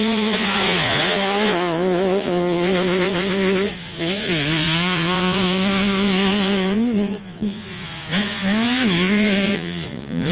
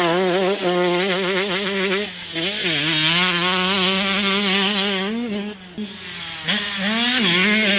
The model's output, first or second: first